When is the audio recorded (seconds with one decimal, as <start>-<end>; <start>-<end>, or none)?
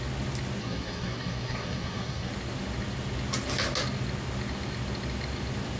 0.0-0.6; 2.3-5.8